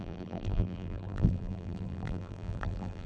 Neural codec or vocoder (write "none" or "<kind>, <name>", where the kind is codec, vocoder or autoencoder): vocoder, BigVGAN v2